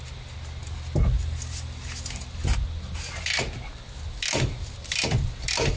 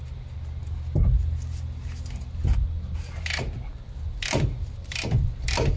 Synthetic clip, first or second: second